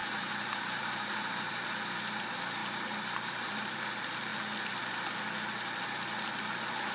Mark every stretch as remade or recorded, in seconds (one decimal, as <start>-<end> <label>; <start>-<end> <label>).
0.0-1.5 remade; 1.5-2.6 recorded; 2.6-3.7 remade; 3.7-6.9 recorded